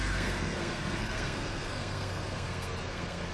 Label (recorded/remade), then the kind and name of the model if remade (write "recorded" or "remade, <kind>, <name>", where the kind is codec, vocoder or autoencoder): remade, codec, SNAC